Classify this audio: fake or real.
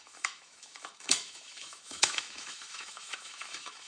fake